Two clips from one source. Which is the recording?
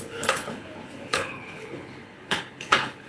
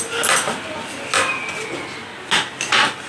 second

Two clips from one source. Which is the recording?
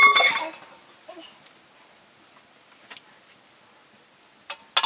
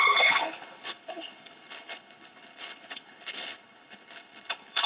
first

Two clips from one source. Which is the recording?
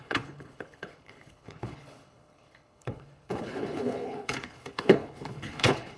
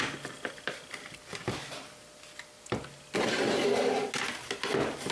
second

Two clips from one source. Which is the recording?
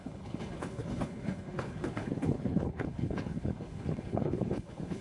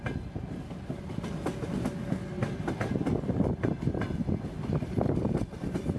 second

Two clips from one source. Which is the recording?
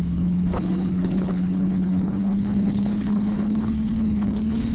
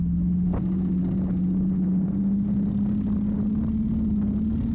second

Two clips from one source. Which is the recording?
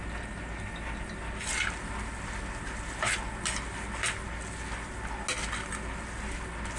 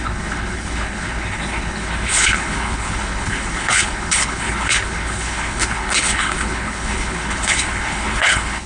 first